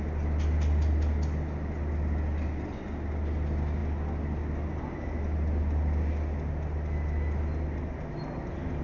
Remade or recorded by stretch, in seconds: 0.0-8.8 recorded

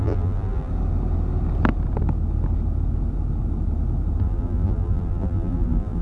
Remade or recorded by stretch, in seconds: 0.0-0.7 remade; 0.7-4.2 recorded; 4.2-6.0 remade

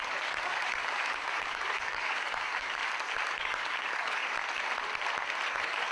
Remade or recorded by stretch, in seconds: 0.0-2.8 remade; 2.8-3.3 recorded; 3.3-4.2 remade; 4.2-5.5 recorded; 5.5-5.9 remade

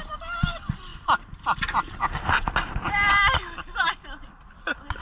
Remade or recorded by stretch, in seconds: 0.0-5.0 remade

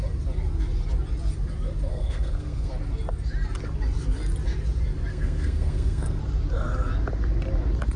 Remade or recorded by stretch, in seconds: 0.0-1.9 recorded; 1.9-2.7 remade; 2.7-5.1 recorded; 5.1-6.2 remade; 6.2-8.0 recorded

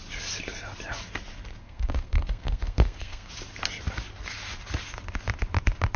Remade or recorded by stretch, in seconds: 0.0-1.6 recorded; 1.6-3.3 remade; 3.3-6.0 recorded